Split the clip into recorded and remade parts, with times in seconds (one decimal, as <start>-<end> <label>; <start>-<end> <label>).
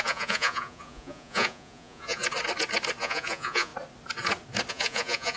0.0-2.2 remade; 2.2-3.0 recorded; 3.0-3.7 remade; 3.7-4.7 recorded; 4.7-5.4 remade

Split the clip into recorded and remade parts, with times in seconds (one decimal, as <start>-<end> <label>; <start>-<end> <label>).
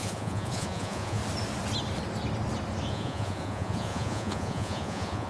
0.0-1.2 remade; 1.2-2.9 recorded; 2.9-5.3 remade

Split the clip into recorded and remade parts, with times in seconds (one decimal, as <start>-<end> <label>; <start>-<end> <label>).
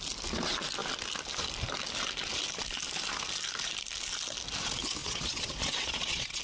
0.0-5.0 recorded; 5.0-6.4 remade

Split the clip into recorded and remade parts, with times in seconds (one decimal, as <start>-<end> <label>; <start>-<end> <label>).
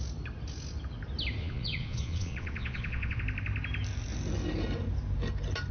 0.0-1.4 recorded; 1.4-3.2 remade; 3.2-5.7 recorded